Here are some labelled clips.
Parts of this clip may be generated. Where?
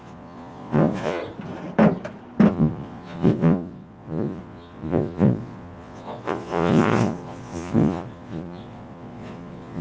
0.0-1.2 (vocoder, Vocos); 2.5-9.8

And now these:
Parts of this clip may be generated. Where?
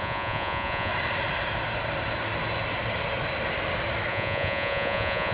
0.0-0.9 (vocoder, Vocos); 4.1-5.3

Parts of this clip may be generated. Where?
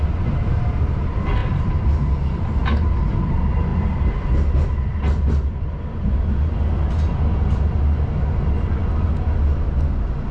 none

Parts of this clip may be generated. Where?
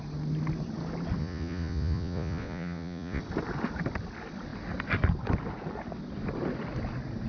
1.2-3.2 (vocoder, Vocos)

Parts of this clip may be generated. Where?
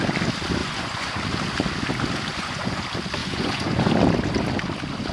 0.6-1.1 (vocoder, Vocos); 2.3-2.8; 3.2-3.9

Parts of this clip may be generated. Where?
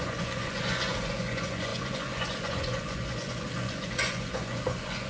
0.0-5.1 (vocoder, Vocos)